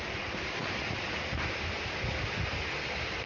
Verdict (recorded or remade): recorded